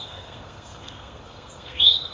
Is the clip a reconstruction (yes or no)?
yes